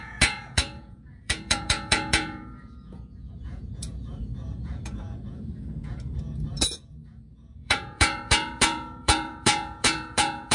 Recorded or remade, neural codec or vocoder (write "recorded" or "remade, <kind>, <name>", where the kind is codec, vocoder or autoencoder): remade, vocoder, Vocos